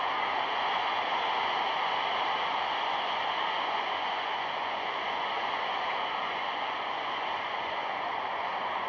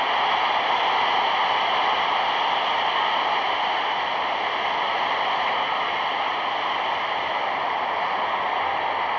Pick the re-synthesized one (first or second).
first